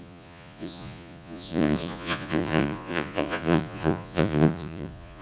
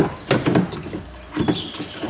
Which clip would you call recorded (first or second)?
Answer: second